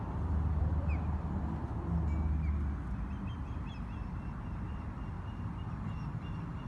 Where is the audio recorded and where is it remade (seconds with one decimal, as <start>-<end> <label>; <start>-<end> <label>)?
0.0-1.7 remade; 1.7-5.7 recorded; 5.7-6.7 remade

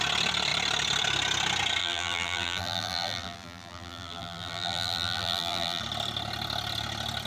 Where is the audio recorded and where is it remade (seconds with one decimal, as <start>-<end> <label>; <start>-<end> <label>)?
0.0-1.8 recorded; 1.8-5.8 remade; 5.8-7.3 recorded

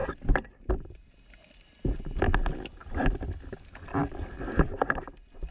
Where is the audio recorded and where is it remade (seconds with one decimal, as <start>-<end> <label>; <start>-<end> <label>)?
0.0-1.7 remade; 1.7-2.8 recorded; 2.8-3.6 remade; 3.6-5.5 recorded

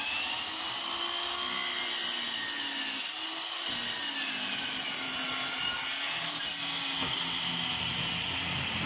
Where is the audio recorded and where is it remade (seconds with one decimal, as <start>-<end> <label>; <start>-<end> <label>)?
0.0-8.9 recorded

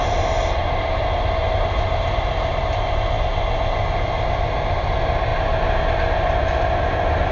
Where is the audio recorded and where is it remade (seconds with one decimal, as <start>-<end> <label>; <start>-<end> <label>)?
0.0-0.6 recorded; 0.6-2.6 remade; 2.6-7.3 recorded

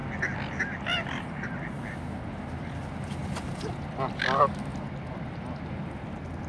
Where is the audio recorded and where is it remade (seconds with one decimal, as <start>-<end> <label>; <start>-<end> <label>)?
0.0-3.2 recorded; 3.2-4.2 remade; 4.2-6.5 recorded